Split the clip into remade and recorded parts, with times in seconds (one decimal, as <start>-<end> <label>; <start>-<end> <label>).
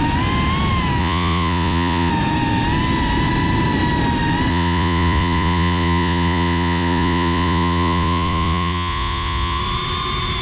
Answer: 0.0-1.0 recorded; 1.0-2.1 remade; 2.1-4.5 recorded; 4.5-9.6 remade; 9.6-10.4 recorded